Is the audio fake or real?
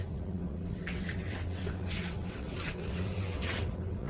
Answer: fake